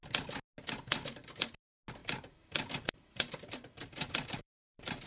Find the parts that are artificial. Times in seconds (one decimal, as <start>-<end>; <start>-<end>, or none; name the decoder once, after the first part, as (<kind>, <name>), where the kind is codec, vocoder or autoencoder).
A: 0.9-1.5 (vocoder, BigVGAN v2); 2.0-5.1